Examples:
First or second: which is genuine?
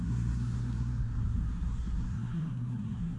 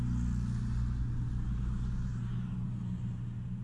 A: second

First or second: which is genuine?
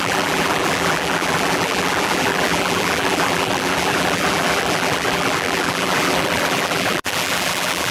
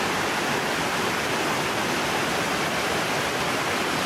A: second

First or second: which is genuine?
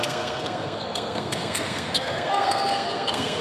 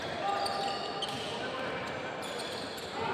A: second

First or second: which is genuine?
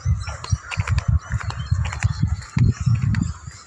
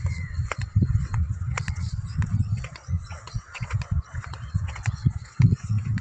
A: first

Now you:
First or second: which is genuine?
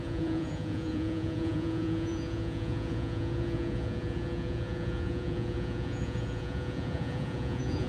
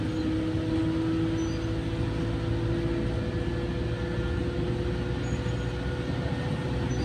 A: second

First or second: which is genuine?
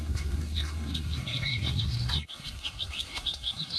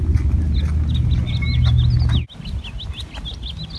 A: second